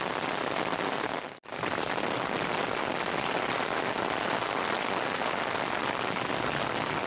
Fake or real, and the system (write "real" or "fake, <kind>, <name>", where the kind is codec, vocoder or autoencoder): real